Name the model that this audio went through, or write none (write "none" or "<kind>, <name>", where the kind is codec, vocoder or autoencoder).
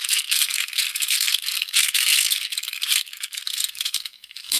codec, SNAC